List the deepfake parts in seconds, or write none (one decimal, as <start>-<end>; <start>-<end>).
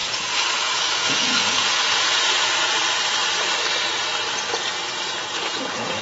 0.0-2.8; 4.5-6.0